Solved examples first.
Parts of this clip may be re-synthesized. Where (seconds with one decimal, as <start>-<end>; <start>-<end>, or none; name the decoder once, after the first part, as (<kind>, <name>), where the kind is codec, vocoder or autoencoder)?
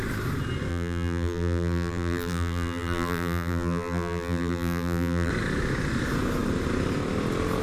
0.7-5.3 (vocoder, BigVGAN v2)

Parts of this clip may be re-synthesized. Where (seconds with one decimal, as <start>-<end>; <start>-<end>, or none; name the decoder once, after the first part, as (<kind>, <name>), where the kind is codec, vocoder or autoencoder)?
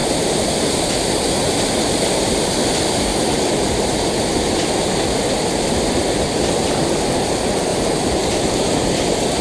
0.0-0.7 (vocoder, BigVGAN v2); 3.1-3.9; 7.7-8.6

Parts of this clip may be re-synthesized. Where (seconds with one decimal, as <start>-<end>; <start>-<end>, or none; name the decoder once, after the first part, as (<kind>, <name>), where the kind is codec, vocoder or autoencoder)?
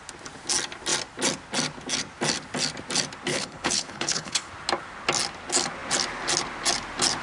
3.3-4.5 (codec, HILCodec)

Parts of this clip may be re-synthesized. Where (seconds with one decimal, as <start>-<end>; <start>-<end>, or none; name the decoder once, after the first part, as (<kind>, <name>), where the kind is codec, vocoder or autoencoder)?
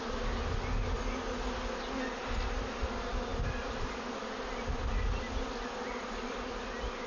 none